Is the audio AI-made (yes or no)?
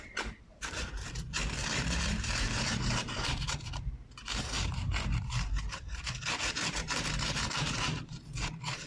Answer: yes